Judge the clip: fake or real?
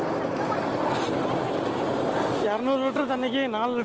real